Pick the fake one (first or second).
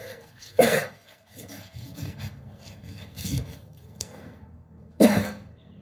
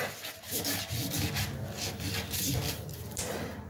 first